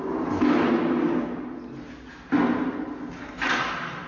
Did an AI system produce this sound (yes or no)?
no